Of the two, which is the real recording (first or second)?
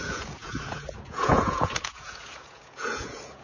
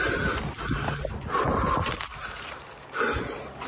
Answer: second